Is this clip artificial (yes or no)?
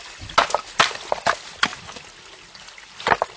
no